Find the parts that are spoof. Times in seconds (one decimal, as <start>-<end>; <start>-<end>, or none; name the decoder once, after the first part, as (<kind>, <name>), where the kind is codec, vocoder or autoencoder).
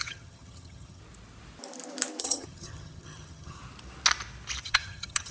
0.0-1.0 (vocoder, HiFi-GAN); 2.2-3.6; 4.6-5.3